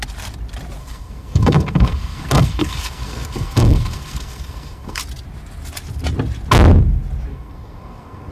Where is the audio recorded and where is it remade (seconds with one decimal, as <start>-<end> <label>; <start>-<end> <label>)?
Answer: 0.0-0.8 recorded; 0.8-5.0 remade; 5.0-7.3 recorded; 7.3-8.3 remade